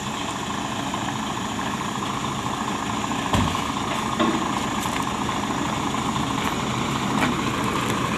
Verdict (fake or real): real